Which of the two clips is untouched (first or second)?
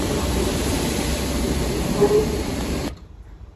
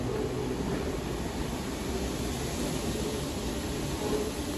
second